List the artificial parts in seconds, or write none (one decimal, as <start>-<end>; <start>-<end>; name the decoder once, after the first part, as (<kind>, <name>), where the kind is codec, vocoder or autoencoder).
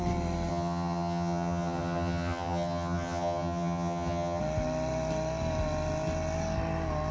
0.5-4.4 (vocoder, HiFi-GAN)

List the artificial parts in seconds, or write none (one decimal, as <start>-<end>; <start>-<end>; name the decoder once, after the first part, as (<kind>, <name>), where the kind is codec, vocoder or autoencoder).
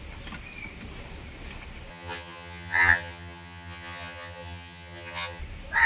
1.9-5.4 (vocoder, HiFi-GAN)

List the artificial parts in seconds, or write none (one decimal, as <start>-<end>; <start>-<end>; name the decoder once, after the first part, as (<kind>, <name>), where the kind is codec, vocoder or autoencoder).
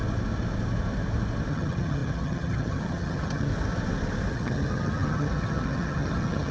1.5-3.5 (vocoder, HiFi-GAN); 4.3-6.5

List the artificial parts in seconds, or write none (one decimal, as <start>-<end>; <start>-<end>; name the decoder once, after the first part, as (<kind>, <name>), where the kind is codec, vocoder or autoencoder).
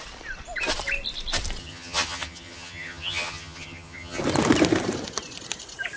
1.6-4.2 (vocoder, HiFi-GAN)